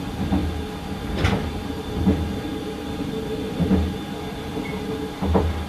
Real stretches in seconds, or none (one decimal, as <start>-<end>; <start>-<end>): 0.0-5.7